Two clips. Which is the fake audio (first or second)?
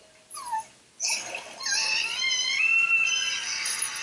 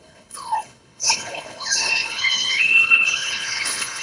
second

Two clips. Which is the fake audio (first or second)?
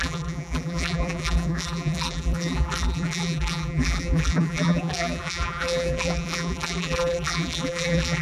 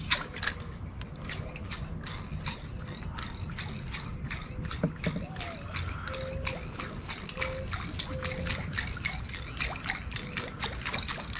first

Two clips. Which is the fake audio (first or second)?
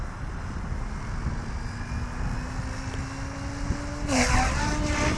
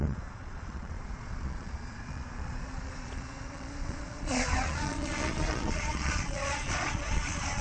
second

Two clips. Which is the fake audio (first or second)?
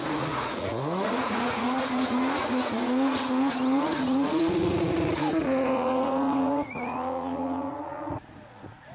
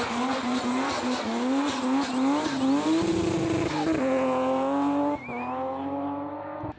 first